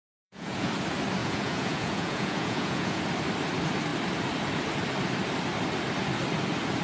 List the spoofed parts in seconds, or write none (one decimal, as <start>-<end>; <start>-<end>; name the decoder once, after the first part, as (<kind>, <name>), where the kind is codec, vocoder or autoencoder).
0.0-0.7 (vocoder, Vocos); 1.2-3.0